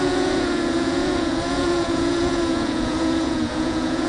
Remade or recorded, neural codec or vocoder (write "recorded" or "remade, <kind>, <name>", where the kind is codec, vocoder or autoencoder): remade, vocoder, Vocos